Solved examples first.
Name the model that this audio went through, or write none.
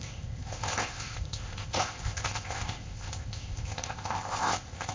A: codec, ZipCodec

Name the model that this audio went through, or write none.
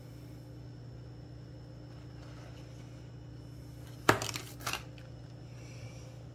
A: none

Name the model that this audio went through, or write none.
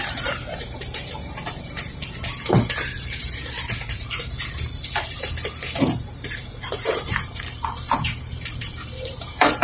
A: vocoder, BigVGAN v2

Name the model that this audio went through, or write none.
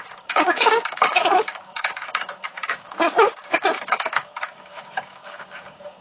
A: codec, DAC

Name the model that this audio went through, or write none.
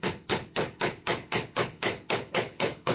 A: codec, HILCodec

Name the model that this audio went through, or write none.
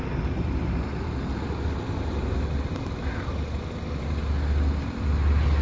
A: none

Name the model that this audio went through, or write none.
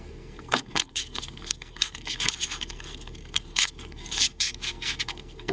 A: codec, SNAC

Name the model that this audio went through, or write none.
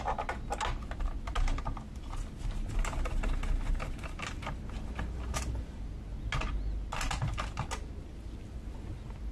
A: none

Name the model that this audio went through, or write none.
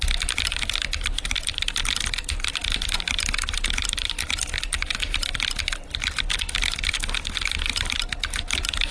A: none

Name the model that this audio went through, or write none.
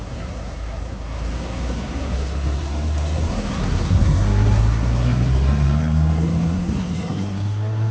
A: codec, SNAC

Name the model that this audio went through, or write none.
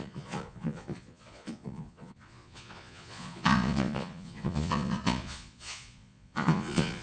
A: vocoder, Vocos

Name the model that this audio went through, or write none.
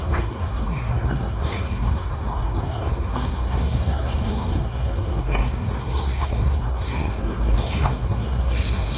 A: codec, SNAC